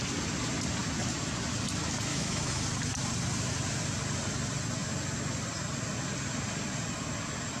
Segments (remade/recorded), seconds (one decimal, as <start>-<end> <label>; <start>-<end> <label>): 0.0-2.1 recorded; 2.1-2.6 remade; 2.6-7.6 recorded